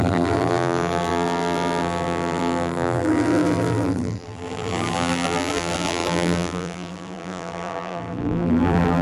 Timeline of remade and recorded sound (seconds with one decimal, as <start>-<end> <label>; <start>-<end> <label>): 0.0-9.0 remade